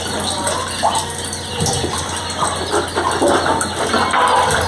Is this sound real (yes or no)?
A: yes